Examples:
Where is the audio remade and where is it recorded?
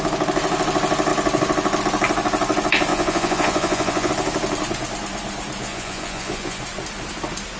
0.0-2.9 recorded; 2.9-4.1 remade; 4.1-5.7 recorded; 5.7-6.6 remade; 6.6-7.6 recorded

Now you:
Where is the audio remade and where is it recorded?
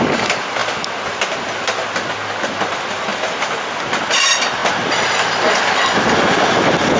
0.0-7.0 recorded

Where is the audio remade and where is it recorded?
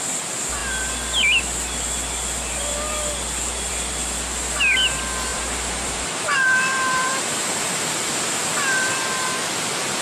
0.0-5.3 recorded; 5.3-8.2 remade; 8.2-10.0 recorded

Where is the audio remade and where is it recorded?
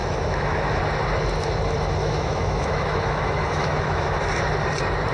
0.0-0.8 remade; 0.8-2.0 recorded; 2.0-4.2 remade; 4.2-5.1 recorded